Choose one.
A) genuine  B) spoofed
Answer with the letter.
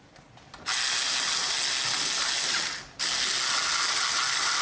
A